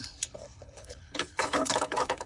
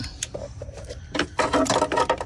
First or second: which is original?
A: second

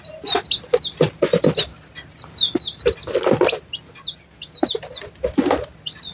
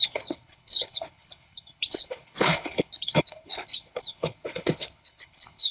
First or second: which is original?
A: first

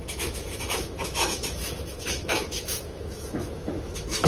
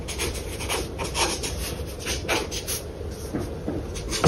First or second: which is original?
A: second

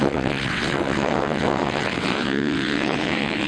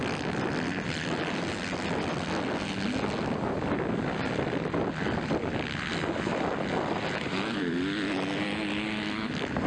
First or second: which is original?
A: second